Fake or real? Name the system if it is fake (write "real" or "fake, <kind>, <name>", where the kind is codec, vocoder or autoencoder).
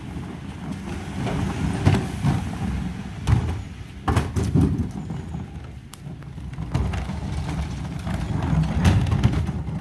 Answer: real